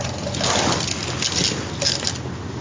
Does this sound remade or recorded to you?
recorded